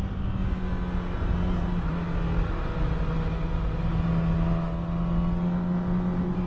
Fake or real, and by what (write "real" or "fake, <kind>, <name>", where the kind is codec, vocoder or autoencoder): real